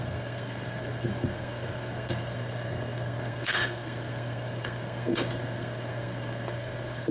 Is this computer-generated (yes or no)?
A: yes